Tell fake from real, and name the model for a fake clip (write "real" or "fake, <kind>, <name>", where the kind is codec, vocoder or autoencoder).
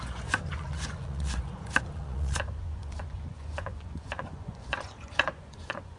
fake, vocoder, Vocos